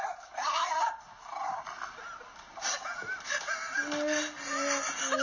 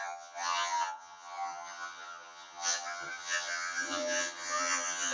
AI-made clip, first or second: second